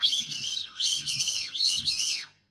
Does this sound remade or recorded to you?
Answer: remade